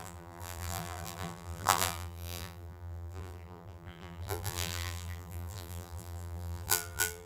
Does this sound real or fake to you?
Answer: fake